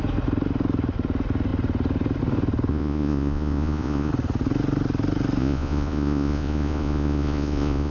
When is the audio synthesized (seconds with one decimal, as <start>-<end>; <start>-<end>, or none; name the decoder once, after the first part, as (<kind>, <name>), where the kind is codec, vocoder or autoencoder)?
2.7-4.1 (vocoder, Vocos); 5.4-7.9